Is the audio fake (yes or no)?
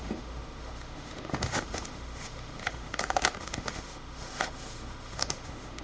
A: yes